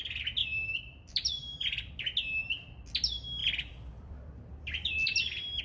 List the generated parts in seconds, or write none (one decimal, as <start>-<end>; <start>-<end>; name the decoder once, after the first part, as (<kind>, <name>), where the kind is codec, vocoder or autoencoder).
0.4-1.9 (vocoder, BigVGAN v2); 3.4-5.6